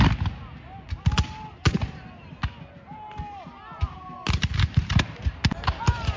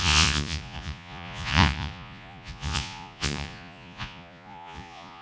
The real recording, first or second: first